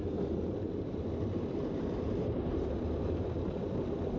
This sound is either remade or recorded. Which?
remade